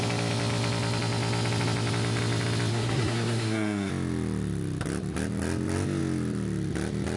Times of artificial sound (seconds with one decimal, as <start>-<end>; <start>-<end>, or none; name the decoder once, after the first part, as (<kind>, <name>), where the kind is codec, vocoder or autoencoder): 2.7-3.9 (codec, SNAC)